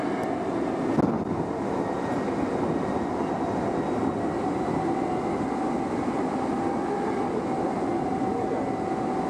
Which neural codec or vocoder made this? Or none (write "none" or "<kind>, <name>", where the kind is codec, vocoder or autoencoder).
none